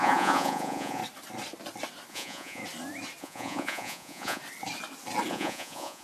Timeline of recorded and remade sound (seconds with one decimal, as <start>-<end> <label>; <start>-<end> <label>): 0.0-1.0 remade; 1.0-2.1 recorded; 2.1-2.6 remade; 2.6-3.2 recorded; 3.2-4.4 remade; 4.4-5.3 recorded; 5.3-6.0 remade